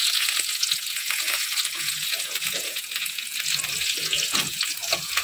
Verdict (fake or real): fake